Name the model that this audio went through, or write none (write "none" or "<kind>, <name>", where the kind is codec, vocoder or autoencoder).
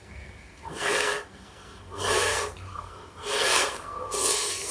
codec, SNAC